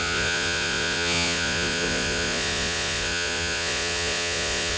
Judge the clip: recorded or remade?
remade